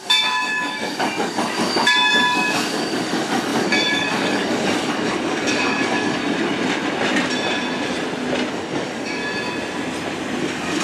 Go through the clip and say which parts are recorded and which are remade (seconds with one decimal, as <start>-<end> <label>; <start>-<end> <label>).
0.0-6.2 remade; 6.2-8.5 recorded; 8.5-9.2 remade; 9.2-10.4 recorded; 10.4-10.8 remade